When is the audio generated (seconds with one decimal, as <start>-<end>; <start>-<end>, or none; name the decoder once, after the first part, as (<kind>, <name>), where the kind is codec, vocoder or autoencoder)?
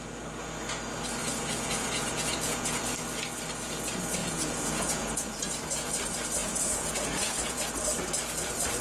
1.2-2.8 (vocoder, Vocos); 4.2-5.9; 6.4-7.6